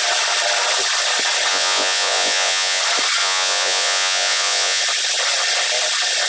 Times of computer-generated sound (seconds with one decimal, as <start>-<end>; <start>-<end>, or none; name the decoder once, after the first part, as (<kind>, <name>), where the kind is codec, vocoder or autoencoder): 1.5-2.8 (vocoder, Vocos); 3.2-4.8